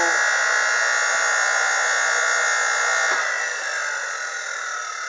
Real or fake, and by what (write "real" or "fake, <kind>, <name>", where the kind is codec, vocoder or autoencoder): real